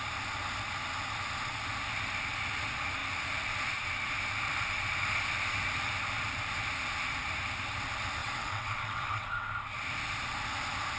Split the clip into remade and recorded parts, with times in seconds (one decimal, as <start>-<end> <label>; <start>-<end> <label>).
0.0-8.2 recorded; 8.2-9.5 remade; 9.5-11.0 recorded